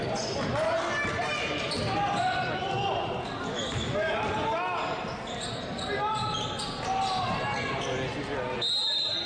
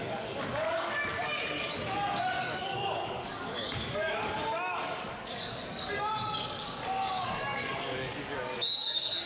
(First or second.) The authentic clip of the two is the first